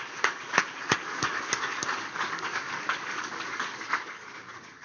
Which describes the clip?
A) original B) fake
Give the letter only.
B